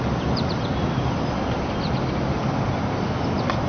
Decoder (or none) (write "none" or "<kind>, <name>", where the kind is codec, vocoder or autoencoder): none